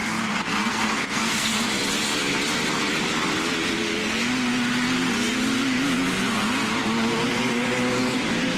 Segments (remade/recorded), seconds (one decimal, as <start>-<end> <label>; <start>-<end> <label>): 0.0-1.6 remade; 1.6-8.6 recorded